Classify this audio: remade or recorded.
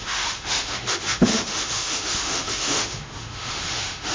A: remade